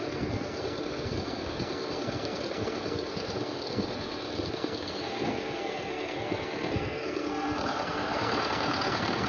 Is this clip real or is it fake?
fake